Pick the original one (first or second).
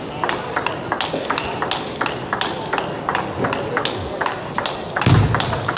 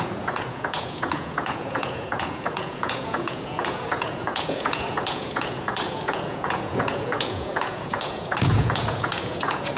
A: first